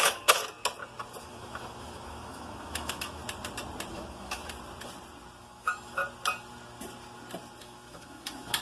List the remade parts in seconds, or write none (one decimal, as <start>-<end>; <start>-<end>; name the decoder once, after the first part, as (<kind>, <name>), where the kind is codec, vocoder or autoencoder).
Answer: 0.0-0.4 (autoencoder, DAC-VAE); 1.2-3.2; 3.9-4.4; 5.4-6.0; 7.6-8.6